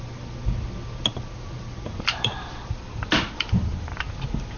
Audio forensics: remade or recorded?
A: recorded